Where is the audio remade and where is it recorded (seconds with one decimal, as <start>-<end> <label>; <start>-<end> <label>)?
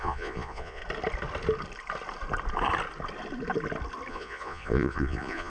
0.0-0.8 remade; 0.8-4.1 recorded; 4.1-5.5 remade